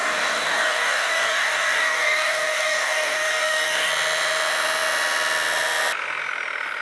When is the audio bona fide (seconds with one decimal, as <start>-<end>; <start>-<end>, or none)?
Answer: 3.9-6.8